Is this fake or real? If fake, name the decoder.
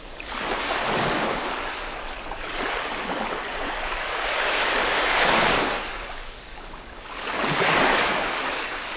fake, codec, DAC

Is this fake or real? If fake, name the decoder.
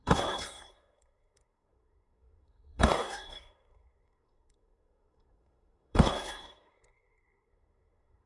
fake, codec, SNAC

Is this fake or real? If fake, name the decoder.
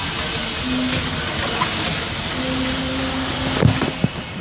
real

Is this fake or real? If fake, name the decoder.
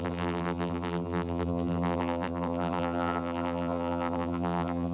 fake, vocoder, BigVGAN v2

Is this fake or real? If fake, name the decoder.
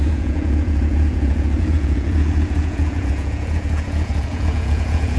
fake, vocoder, Vocos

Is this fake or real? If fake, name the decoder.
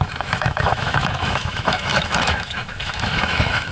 fake, autoencoder, DAC-VAE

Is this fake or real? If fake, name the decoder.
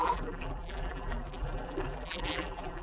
fake, vocoder, BigVGAN v2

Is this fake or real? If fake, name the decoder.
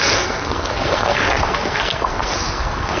fake, codec, SNAC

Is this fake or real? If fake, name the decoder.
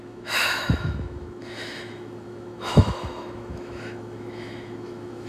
fake, autoencoder, DAC-VAE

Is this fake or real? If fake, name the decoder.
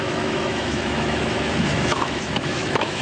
fake, autoencoder, DAC-VAE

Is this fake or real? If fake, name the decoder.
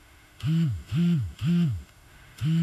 fake, autoencoder, DAC-VAE